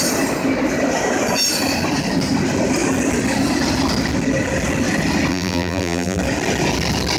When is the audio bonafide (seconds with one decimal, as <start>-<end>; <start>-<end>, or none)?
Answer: 0.0-5.3; 6.2-7.2